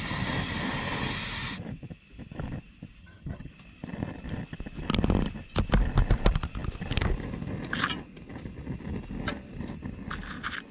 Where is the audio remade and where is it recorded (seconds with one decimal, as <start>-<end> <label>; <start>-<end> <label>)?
0.0-3.0 recorded; 3.0-3.5 remade; 3.5-10.7 recorded